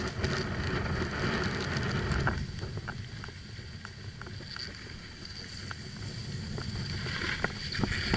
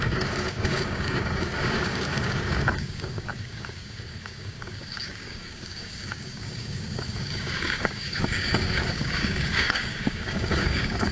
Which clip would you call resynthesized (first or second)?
second